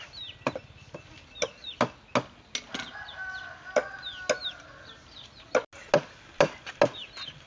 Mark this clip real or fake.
real